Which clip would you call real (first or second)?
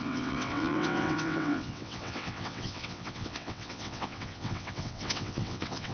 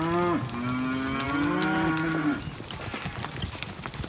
second